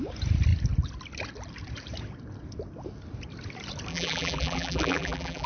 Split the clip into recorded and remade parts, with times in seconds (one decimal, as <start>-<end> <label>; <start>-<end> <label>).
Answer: 0.0-3.9 recorded; 3.9-5.5 remade